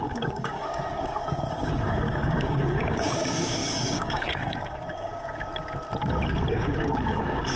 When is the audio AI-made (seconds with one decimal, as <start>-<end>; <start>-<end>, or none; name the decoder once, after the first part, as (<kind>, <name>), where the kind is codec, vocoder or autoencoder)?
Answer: 0.0-5.5 (codec, DAC); 6.5-7.6